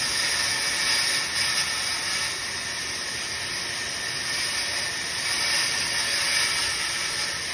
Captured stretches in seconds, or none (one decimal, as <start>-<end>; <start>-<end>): 0.0-4.7; 5.9-7.5